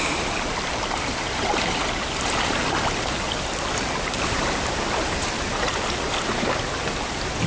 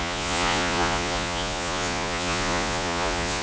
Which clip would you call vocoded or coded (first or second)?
second